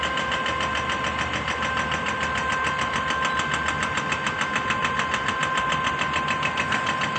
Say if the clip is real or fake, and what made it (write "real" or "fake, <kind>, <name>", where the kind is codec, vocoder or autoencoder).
real